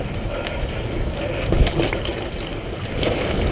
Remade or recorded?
recorded